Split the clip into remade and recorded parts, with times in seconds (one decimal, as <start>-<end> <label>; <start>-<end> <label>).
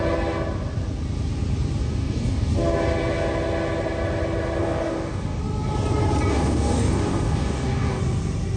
0.0-1.8 recorded; 1.8-2.5 remade; 2.5-4.6 recorded; 4.6-5.4 remade; 5.4-6.3 recorded; 6.3-8.0 remade; 8.0-8.6 recorded